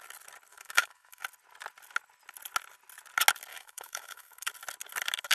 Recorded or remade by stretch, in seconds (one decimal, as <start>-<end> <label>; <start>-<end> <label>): 0.0-0.5 recorded; 0.5-1.2 remade; 1.2-3.5 recorded; 3.5-4.5 remade; 4.5-5.3 recorded